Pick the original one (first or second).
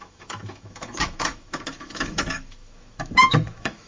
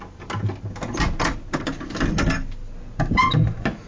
second